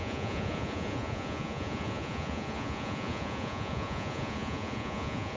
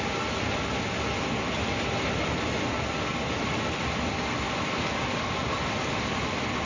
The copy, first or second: first